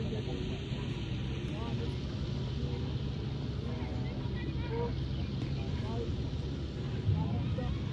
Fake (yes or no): no